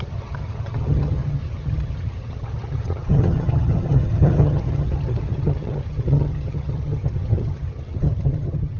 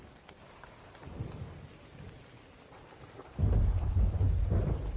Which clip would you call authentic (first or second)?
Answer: second